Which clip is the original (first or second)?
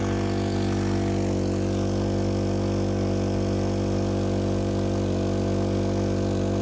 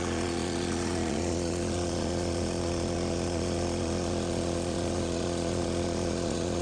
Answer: first